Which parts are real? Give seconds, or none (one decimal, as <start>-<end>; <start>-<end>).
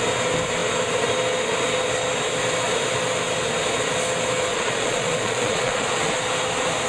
0.0-4.5; 6.2-6.9